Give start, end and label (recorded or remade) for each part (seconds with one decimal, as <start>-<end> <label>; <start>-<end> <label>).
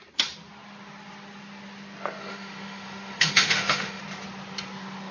0.0-2.3 recorded; 2.3-4.0 remade; 4.0-5.1 recorded